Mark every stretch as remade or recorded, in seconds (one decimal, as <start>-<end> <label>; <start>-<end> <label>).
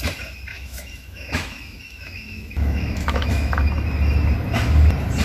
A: 0.0-0.5 recorded; 0.5-3.6 remade; 3.6-5.2 recorded